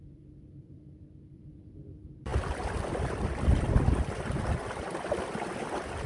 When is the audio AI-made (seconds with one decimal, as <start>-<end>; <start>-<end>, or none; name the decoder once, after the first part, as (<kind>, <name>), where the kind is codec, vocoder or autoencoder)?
0.0-2.3 (vocoder, BigVGAN v2)